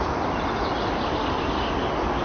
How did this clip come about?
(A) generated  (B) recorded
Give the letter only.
B